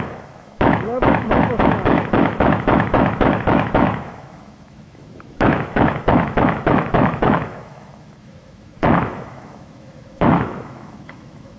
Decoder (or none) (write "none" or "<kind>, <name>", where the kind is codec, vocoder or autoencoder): autoencoder, DAC-VAE